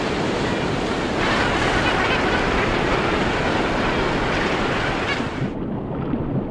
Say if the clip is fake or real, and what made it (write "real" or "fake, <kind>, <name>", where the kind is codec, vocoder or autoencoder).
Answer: real